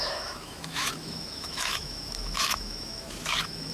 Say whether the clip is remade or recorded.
remade